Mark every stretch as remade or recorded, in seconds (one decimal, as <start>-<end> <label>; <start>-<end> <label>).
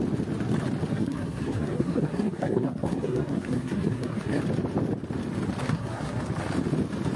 0.0-0.9 recorded; 0.9-4.4 remade; 4.4-5.6 recorded; 5.6-6.2 remade; 6.2-7.2 recorded